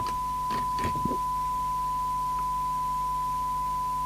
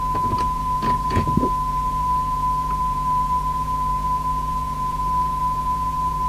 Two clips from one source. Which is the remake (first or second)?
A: second